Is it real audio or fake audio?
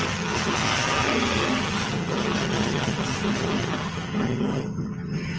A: fake